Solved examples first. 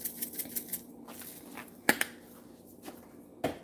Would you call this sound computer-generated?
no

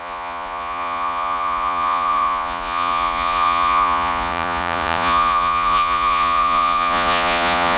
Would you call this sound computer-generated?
yes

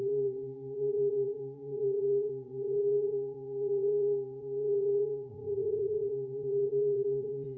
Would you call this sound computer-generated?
yes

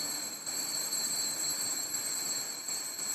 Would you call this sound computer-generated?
no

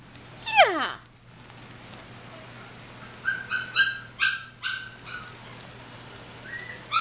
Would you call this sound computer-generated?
no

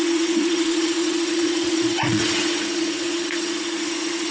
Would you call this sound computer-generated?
yes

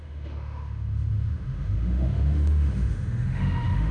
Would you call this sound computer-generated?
yes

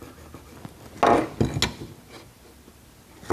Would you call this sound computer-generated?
no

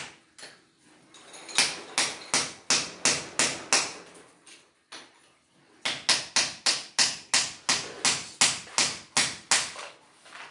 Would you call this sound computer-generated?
no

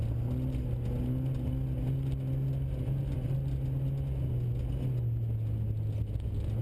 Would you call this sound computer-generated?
no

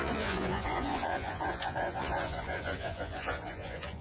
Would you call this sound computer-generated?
yes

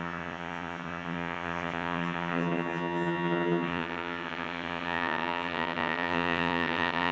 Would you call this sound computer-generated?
yes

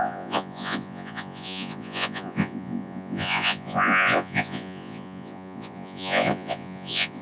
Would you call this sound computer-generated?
yes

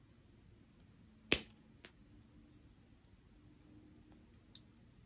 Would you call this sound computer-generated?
no